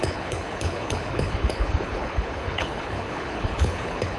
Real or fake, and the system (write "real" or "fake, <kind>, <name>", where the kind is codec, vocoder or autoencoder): fake, codec, HILCodec